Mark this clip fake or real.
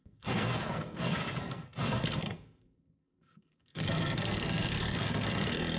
fake